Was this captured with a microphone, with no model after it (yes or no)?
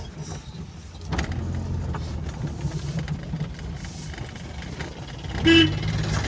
yes